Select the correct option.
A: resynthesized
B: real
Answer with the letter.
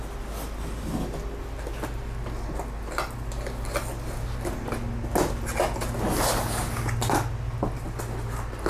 B